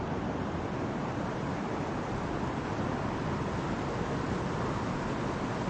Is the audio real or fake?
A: real